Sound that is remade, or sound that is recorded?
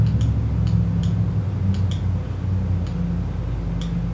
recorded